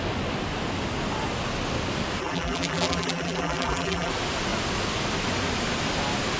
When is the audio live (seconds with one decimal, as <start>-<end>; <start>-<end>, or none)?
0.0-2.2; 4.1-6.4